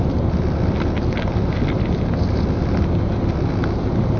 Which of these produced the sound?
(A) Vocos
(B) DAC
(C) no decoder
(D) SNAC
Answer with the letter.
C